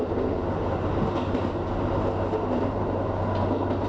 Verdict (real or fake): real